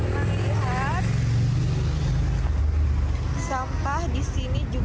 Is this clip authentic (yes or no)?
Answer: yes